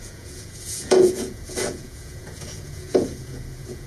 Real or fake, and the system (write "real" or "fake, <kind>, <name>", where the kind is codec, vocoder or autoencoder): fake, vocoder, Vocos